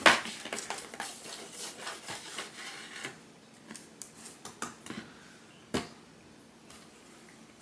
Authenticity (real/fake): real